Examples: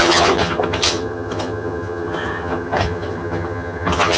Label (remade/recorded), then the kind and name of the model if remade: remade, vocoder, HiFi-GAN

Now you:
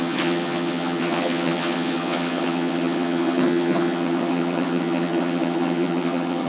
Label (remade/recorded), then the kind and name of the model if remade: remade, vocoder, HiFi-GAN